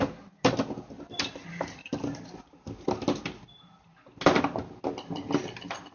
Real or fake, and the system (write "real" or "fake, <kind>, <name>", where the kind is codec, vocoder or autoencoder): real